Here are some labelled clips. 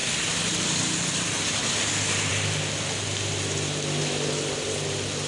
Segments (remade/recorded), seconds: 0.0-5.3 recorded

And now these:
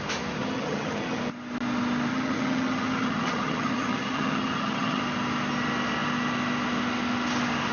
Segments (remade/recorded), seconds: 0.0-0.4 recorded; 0.4-1.2 remade; 1.2-2.1 recorded; 2.1-5.0 remade; 5.0-7.7 recorded

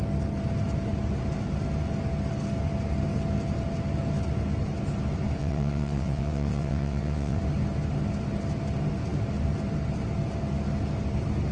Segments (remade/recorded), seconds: 0.0-5.4 recorded; 5.4-7.4 remade; 7.4-11.5 recorded